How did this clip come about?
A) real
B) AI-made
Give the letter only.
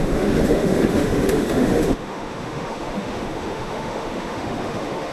B